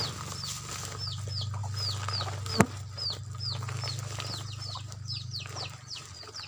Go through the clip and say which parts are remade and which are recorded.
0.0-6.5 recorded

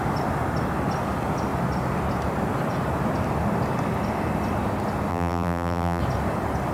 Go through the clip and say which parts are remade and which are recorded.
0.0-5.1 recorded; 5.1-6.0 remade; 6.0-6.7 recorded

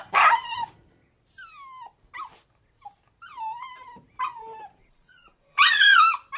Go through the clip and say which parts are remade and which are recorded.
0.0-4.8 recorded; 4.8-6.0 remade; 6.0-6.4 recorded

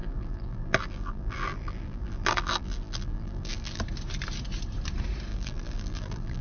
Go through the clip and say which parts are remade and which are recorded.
0.0-3.8 remade; 3.8-5.3 recorded; 5.3-6.4 remade